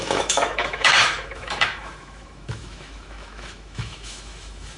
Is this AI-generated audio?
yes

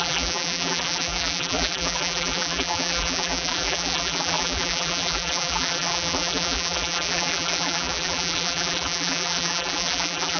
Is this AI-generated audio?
yes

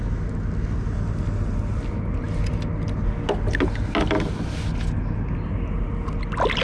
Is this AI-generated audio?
no